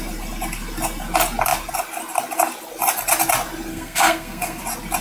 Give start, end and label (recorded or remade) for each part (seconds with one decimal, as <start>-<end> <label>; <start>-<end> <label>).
0.0-3.7 recorded; 3.7-4.6 remade; 4.6-5.0 recorded